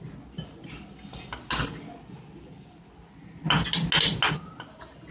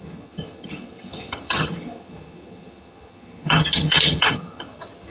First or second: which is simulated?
second